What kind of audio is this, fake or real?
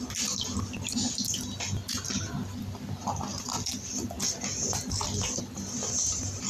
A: real